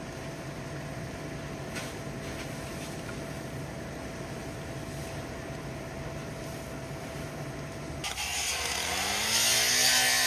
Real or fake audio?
real